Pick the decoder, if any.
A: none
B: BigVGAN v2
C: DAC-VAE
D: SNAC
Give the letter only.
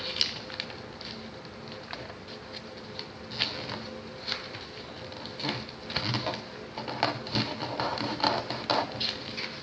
A